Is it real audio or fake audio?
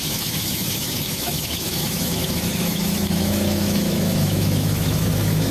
fake